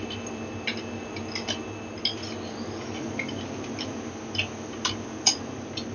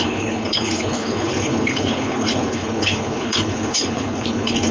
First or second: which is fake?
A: second